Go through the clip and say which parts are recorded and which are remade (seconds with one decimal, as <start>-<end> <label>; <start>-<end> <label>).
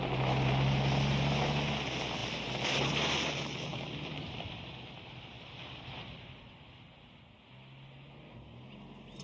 0.0-2.2 recorded; 2.2-3.1 remade; 3.1-3.7 recorded; 3.7-4.7 remade; 4.7-9.2 recorded